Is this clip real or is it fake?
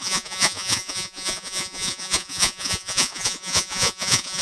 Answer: fake